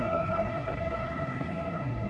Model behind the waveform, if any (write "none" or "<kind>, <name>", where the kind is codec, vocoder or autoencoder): codec, SNAC